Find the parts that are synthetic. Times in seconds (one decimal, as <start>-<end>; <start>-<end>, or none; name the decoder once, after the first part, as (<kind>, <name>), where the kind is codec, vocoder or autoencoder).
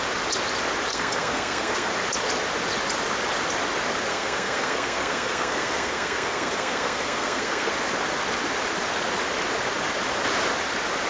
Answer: 0.9-1.9 (codec, SNAC); 4.1-7.7